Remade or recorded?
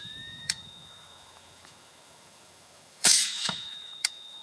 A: remade